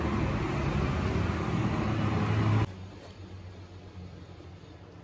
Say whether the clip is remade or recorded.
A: recorded